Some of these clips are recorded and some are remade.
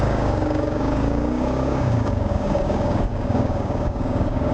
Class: remade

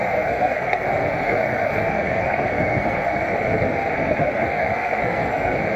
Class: remade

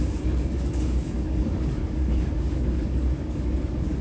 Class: remade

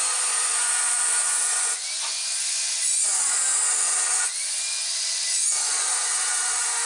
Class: remade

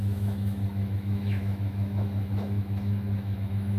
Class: remade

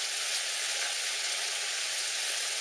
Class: remade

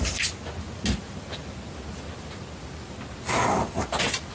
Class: recorded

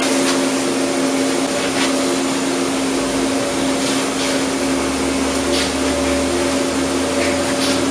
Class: recorded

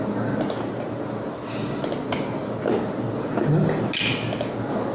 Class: recorded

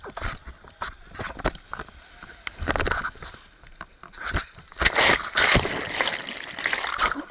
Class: recorded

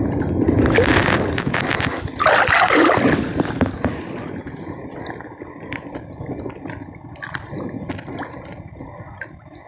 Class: recorded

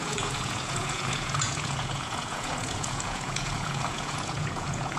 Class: remade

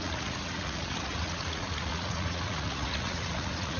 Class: remade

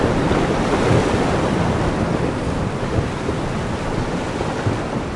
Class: remade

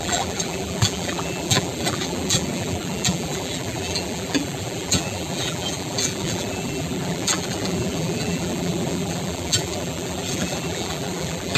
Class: remade